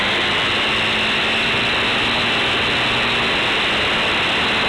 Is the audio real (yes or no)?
yes